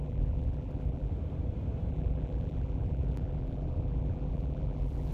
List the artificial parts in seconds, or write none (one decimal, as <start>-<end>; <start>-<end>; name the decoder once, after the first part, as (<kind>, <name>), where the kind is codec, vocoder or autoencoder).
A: 0.0-1.1 (vocoder, BigVGAN v2); 1.9-5.1